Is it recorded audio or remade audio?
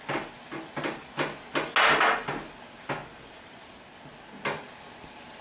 recorded